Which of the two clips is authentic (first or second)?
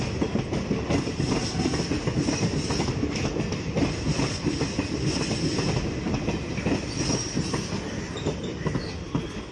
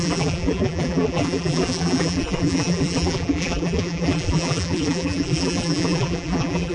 first